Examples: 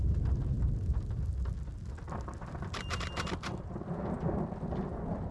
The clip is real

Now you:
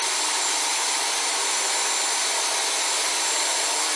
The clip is real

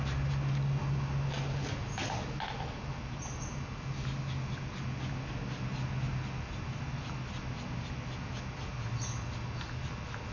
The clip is real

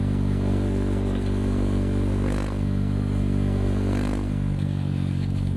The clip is fake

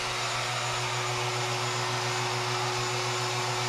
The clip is real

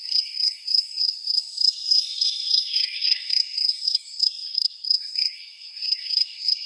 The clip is fake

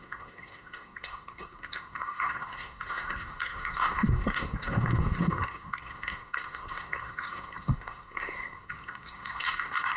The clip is fake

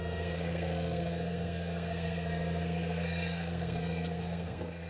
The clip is fake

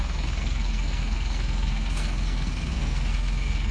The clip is fake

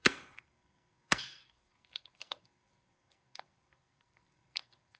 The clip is fake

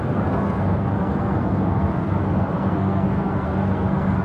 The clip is fake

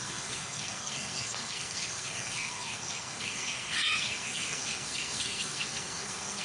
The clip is fake